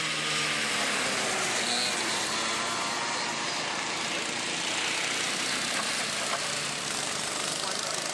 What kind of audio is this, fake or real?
real